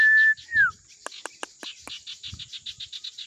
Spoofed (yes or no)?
no